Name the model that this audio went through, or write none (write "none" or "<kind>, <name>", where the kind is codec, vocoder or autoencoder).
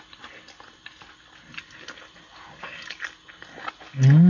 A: none